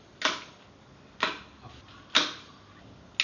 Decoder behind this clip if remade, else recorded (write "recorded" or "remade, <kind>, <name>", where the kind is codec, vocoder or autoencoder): recorded